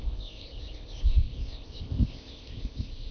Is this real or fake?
fake